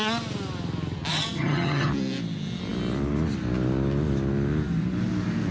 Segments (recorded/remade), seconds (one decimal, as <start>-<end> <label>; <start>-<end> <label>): 0.0-1.1 recorded; 1.1-1.9 remade; 1.9-5.5 recorded